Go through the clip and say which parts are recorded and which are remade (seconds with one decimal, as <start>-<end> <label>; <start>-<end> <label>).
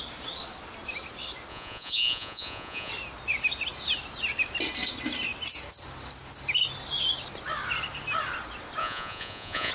0.0-1.5 recorded; 1.5-2.9 remade; 2.9-8.8 recorded; 8.8-9.7 remade